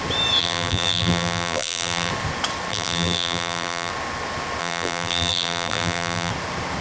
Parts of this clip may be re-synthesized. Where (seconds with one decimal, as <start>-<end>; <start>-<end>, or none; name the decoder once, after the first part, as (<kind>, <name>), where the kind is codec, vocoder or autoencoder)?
0.4-2.1 (vocoder, BigVGAN v2); 2.7-3.9; 4.6-6.3